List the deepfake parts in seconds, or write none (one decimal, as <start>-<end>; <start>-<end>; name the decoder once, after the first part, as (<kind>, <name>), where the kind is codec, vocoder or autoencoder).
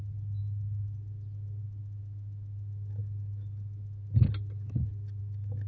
none